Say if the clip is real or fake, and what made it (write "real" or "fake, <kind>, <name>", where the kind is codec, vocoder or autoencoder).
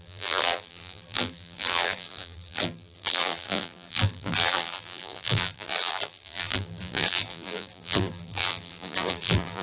fake, vocoder, BigVGAN v2